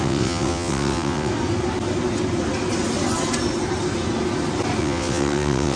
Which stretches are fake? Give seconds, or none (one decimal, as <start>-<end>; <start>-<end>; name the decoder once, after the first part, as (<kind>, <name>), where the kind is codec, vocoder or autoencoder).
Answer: 0.0-1.3 (vocoder, WaveNeXt); 4.8-5.8